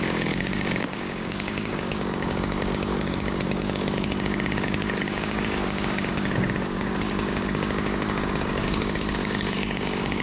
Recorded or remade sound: remade